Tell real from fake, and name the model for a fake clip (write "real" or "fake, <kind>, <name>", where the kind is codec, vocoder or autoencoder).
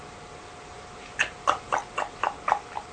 real